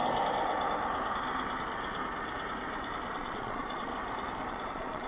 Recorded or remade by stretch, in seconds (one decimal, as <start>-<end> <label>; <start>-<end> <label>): 0.0-3.1 recorded; 3.1-3.9 remade; 3.9-4.5 recorded; 4.5-5.1 remade